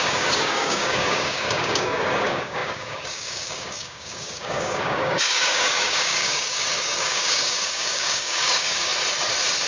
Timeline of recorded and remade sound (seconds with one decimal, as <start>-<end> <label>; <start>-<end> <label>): 0.0-8.9 remade; 8.9-9.7 recorded